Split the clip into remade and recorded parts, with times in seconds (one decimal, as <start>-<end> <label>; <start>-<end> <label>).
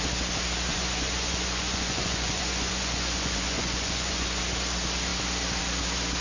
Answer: 0.0-0.7 recorded; 0.7-4.4 remade; 4.4-6.2 recorded